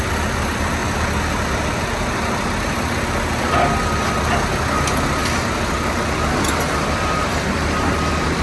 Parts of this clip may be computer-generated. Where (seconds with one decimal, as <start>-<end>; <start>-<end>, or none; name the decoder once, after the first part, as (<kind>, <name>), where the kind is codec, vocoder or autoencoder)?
0.8-1.8 (vocoder, BigVGAN v2); 5.2-8.4